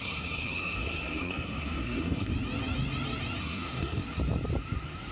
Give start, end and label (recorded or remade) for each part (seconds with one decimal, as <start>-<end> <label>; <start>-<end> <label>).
0.0-2.3 remade; 2.3-3.4 recorded; 3.4-4.0 remade; 4.0-5.1 recorded